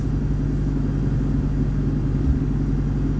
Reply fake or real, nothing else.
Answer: real